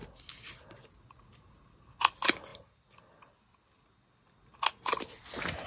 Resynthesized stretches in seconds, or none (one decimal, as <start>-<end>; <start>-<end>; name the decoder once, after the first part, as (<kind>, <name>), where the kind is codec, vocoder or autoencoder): none